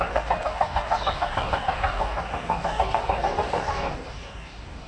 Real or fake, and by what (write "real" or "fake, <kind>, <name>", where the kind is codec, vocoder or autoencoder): fake, codec, DAC